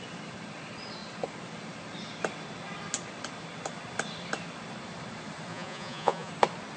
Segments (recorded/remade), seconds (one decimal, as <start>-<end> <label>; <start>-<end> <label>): 0.0-5.5 recorded; 5.5-6.3 remade; 6.3-6.8 recorded